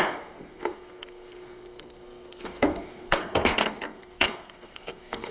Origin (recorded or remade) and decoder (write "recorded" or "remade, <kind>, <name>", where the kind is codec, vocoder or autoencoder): remade, codec, SNAC